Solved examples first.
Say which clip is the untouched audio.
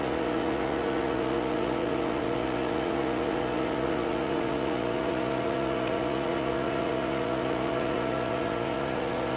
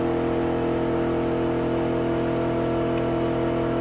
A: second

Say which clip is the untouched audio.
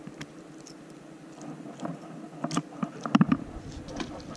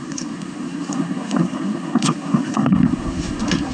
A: first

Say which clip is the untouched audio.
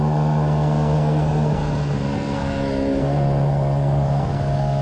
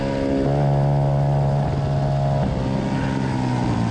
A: second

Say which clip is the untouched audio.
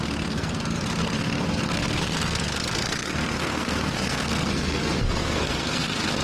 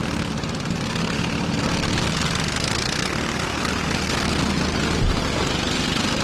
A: second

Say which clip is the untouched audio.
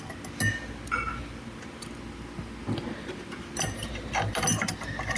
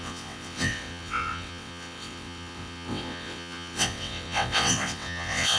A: first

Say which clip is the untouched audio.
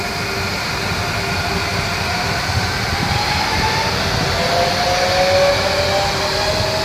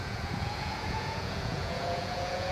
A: first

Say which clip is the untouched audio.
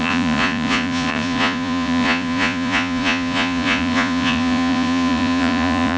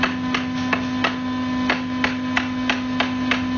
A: second